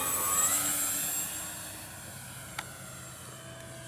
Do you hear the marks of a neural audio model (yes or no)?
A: no